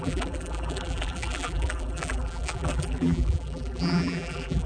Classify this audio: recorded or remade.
remade